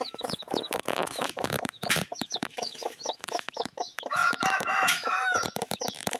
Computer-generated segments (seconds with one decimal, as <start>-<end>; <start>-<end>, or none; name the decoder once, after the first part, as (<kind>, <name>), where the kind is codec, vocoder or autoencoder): 0.0-6.2 (autoencoder, DAC-VAE)